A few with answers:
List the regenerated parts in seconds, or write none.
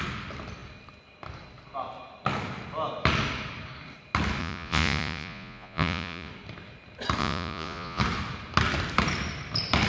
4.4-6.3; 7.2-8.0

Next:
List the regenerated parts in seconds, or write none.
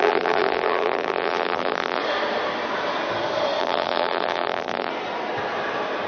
0.0-2.0; 3.6-4.9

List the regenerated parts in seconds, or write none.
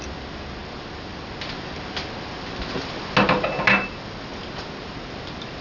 none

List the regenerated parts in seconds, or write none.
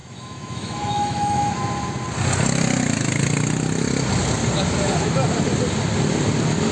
0.0-1.5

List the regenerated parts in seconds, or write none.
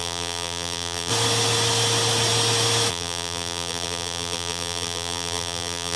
0.0-1.1; 2.9-6.0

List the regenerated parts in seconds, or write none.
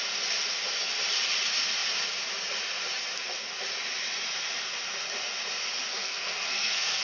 5.9-7.0